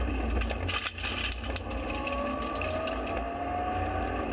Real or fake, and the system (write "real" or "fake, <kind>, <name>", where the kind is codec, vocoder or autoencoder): real